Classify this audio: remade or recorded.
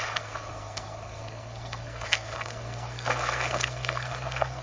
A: remade